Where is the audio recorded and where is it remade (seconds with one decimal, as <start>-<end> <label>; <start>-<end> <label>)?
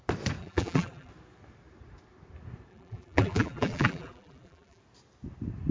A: 0.0-0.4 recorded; 0.4-1.1 remade; 1.1-2.7 recorded; 2.7-4.8 remade; 4.8-5.7 recorded